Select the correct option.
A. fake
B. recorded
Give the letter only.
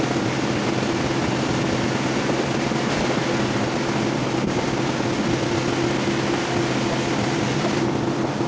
B